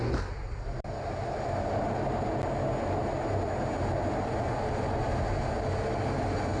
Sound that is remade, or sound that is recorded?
recorded